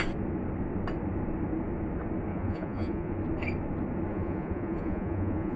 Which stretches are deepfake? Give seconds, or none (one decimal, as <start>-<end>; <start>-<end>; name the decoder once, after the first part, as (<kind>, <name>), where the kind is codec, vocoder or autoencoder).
2.3-3.2 (vocoder, Vocos); 4.1-5.6